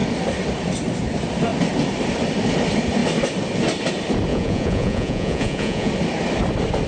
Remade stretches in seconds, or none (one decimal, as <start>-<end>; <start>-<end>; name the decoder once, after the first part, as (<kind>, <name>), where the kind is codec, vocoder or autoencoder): 4.3-5.9 (vocoder, Vocos)